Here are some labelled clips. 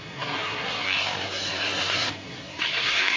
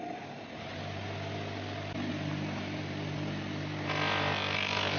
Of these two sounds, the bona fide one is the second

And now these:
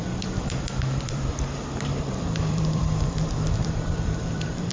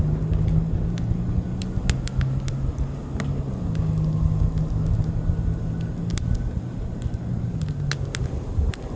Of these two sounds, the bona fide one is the second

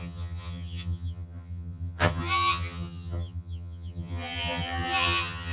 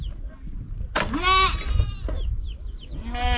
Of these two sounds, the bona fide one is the second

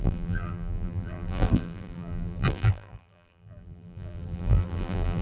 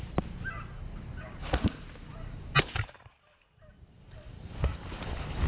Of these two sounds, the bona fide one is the second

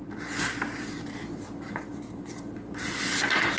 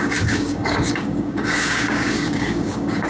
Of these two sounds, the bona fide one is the first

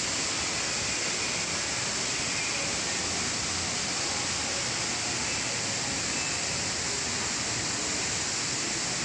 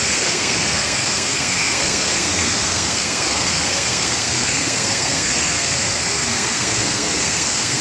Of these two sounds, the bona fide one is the first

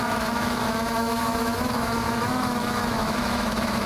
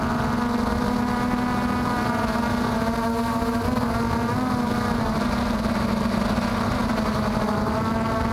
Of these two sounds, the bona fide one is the second